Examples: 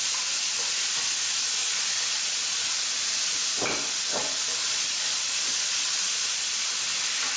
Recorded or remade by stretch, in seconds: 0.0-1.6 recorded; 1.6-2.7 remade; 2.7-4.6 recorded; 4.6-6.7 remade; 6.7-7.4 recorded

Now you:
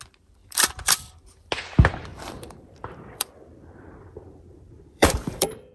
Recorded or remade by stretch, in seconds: 0.0-0.4 recorded; 0.4-1.1 remade; 1.1-2.1 recorded; 2.1-5.7 remade